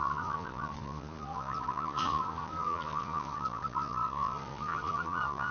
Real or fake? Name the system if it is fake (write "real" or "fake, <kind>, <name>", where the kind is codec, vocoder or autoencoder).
fake, vocoder, Vocos